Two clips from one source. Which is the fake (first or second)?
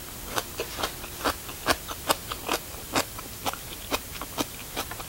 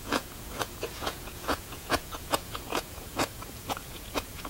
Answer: second